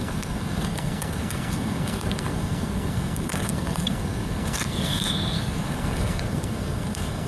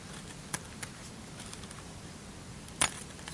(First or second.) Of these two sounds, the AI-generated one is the first